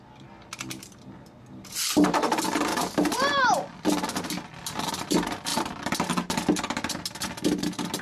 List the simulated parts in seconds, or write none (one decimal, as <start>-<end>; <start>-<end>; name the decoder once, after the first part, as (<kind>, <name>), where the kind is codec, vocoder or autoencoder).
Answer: none